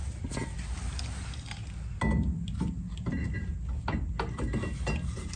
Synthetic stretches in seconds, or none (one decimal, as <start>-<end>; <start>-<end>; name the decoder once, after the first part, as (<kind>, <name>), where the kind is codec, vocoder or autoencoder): 0.0-1.9 (vocoder, BigVGAN v2)